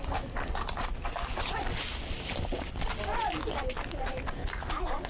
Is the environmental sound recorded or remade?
recorded